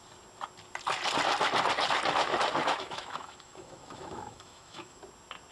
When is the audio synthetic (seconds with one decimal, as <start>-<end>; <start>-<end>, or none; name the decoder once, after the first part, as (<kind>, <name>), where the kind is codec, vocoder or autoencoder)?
2.6-5.0 (autoencoder, DAC-VAE)